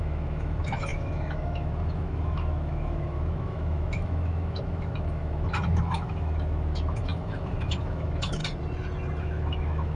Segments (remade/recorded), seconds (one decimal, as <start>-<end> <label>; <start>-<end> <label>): 0.0-8.4 remade; 8.4-9.2 recorded; 9.2-10.0 remade